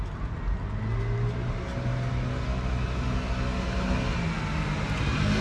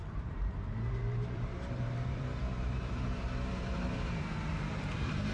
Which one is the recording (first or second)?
first